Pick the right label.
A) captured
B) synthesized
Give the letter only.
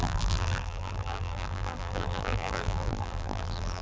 B